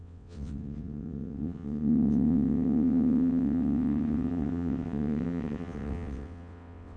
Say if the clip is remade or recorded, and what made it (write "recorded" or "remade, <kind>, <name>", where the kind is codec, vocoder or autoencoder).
remade, vocoder, WaveNeXt